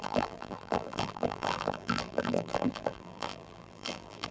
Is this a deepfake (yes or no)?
yes